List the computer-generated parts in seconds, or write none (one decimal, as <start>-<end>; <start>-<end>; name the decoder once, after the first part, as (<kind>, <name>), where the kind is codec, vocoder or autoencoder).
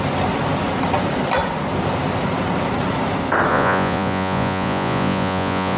3.5-5.8 (vocoder, Vocos)